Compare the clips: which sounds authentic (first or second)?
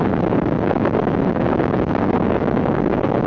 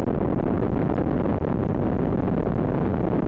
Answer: second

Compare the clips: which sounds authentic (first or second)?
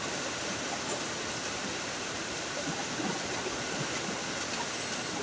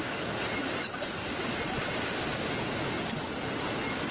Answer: second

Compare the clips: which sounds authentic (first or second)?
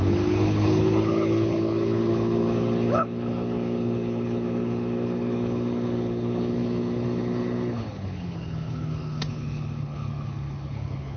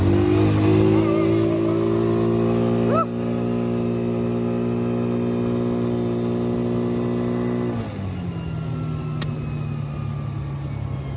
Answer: second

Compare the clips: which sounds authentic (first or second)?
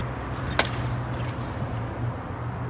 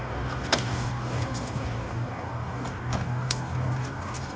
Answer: first